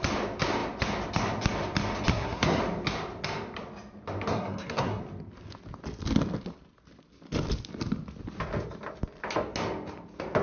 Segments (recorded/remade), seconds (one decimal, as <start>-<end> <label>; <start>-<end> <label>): 0.0-2.1 recorded; 2.1-2.6 remade; 2.6-4.3 recorded; 4.3-5.0 remade; 5.0-10.4 recorded